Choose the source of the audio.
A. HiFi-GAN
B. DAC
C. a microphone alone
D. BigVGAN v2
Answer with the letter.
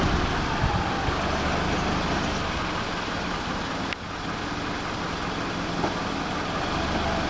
C